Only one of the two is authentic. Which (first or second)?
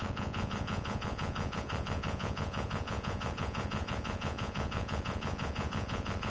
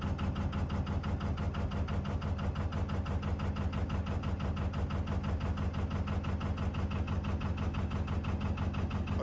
second